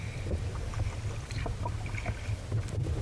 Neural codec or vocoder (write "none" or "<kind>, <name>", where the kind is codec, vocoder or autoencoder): none